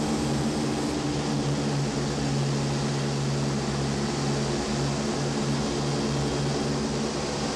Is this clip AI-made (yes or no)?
no